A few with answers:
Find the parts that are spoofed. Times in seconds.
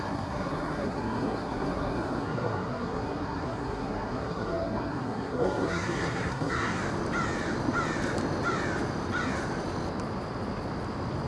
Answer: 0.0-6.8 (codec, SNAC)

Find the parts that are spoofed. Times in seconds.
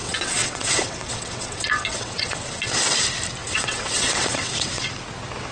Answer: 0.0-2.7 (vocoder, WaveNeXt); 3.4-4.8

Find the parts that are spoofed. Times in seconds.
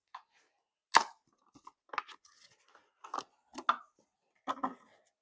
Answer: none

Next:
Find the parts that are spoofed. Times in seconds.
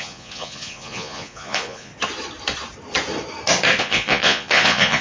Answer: 0.0-1.9 (vocoder, Vocos); 3.8-5.0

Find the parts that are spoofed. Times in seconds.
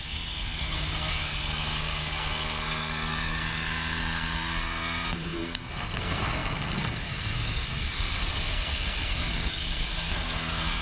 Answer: 0.0-10.8 (codec, SNAC)